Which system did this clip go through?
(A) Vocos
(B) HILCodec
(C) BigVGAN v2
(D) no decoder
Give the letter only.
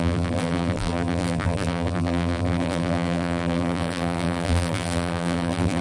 C